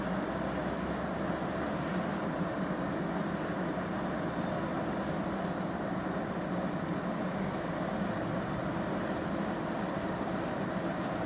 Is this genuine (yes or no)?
yes